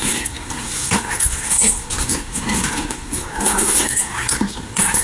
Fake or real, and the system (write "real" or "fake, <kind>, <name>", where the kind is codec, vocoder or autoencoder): fake, codec, SNAC